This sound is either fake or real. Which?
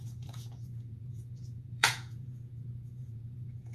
fake